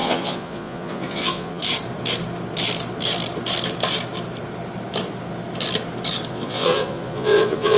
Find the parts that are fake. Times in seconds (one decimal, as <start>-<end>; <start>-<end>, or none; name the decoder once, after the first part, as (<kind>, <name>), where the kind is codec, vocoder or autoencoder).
0.0-1.6 (vocoder, Vocos); 6.3-7.8